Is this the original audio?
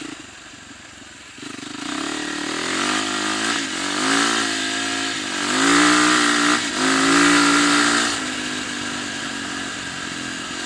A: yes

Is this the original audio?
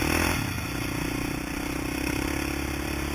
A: yes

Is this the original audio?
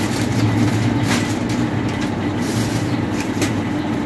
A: yes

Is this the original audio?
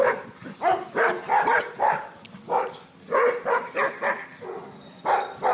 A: yes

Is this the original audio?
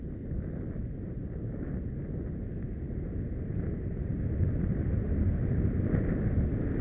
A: yes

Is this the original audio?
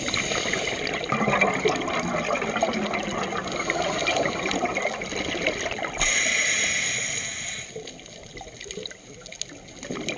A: yes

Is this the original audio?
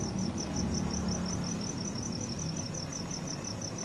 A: yes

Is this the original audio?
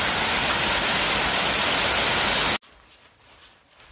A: yes